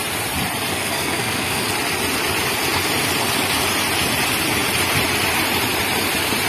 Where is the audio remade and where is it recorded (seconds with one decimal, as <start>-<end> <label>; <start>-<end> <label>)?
0.0-0.7 recorded; 0.7-1.6 remade; 1.6-6.5 recorded